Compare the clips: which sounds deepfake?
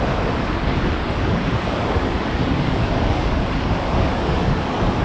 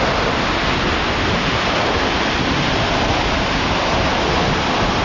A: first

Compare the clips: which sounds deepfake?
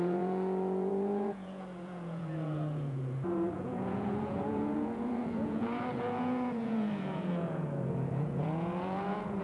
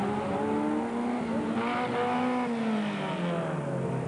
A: first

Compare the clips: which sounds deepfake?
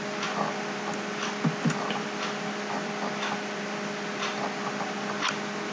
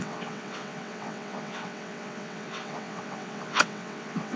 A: second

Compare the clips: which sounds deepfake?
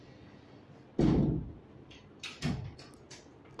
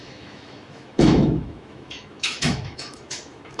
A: second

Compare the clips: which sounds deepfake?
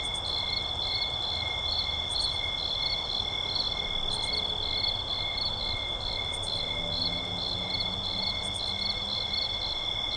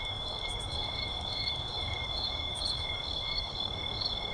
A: second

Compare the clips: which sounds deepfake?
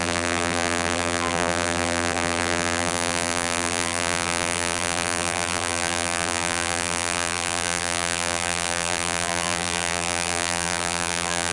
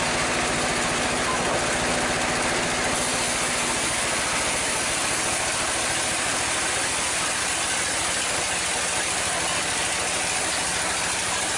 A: first